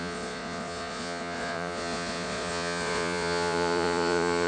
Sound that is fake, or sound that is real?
fake